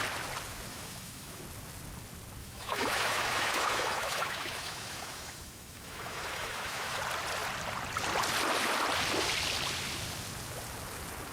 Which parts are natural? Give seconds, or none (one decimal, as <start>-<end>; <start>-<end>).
0.0-0.7; 1.4-2.4; 7.0-11.3